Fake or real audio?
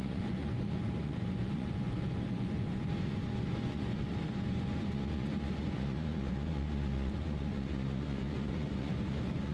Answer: fake